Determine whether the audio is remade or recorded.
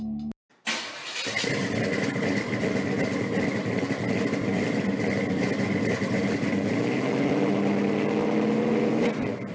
recorded